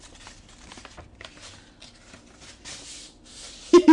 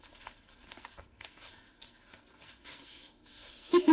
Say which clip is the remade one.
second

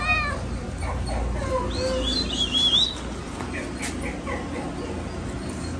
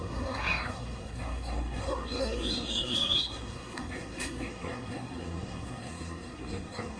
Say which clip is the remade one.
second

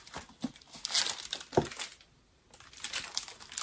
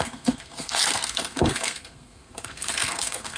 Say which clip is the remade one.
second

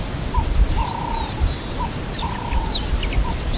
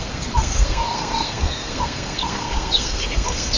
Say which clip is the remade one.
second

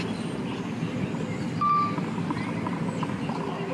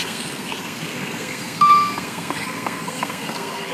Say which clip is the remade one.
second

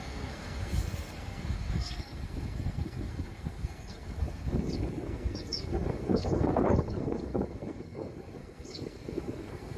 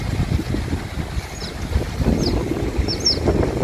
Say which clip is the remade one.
first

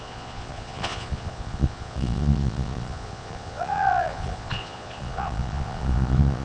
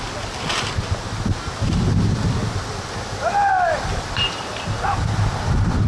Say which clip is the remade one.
first